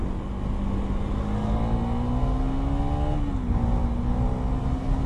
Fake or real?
real